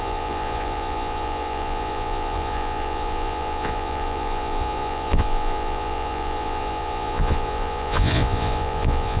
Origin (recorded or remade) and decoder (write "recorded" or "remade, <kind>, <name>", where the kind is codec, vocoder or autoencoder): remade, vocoder, Vocos